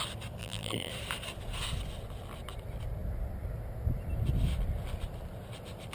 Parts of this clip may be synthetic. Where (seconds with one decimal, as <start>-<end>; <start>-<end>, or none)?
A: 0.4-0.9